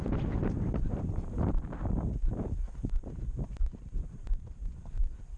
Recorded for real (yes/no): yes